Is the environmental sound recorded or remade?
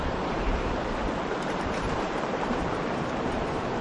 remade